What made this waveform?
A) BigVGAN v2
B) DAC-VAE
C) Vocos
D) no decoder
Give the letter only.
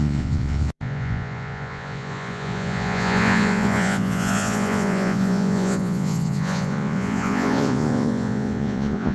C